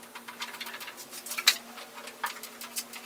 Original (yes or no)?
yes